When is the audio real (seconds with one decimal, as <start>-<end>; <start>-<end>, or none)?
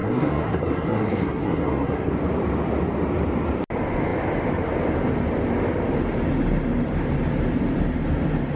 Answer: 2.1-8.6